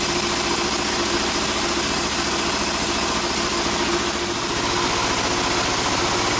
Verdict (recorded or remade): recorded